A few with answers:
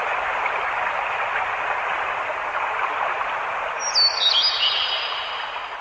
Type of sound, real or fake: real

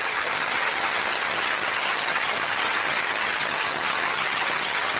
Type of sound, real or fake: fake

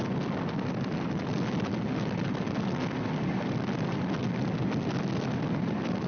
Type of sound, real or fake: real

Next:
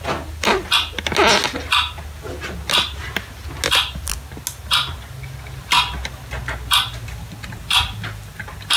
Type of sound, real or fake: real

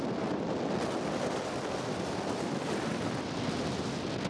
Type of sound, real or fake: real